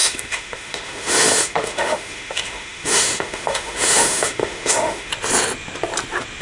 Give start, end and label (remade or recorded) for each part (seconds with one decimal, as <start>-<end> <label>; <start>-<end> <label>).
0.0-5.1 remade; 5.1-6.4 recorded